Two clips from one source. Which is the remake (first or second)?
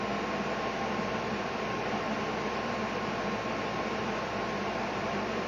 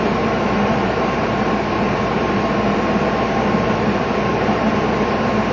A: second